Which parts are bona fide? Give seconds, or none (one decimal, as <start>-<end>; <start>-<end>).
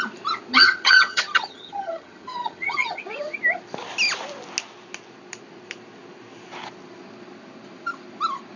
0.0-0.5; 3.0-8.6